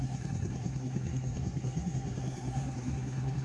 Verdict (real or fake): fake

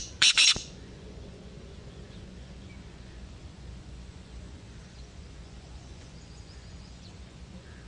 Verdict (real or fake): fake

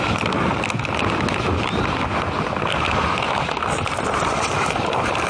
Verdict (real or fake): real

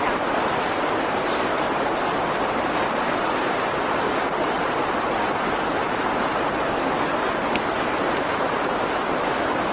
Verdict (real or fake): real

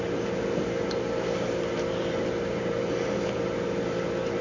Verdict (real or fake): real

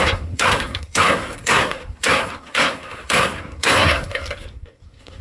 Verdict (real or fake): fake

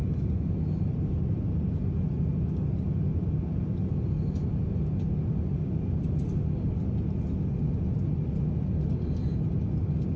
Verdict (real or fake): real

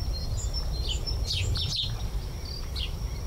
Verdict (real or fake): real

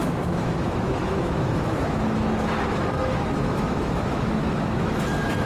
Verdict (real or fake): fake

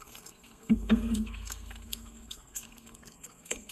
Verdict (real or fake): fake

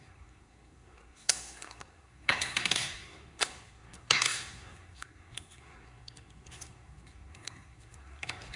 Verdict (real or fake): fake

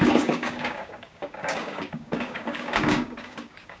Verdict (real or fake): fake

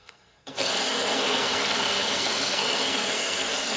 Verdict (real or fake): fake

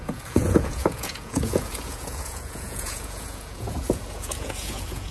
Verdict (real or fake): fake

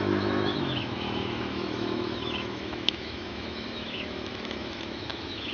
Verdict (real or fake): fake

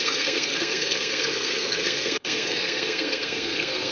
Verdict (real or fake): fake